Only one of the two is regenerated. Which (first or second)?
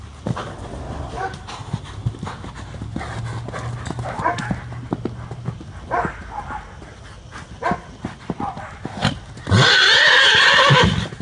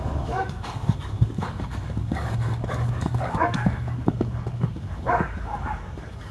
second